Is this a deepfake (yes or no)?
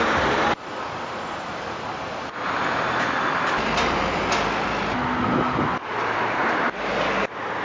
no